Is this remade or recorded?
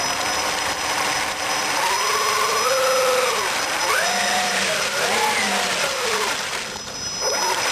recorded